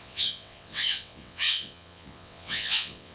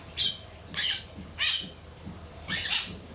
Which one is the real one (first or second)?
second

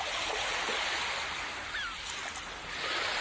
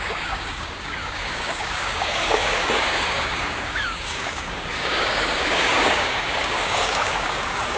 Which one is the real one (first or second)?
first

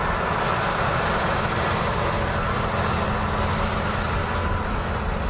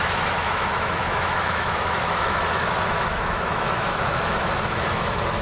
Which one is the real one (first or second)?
first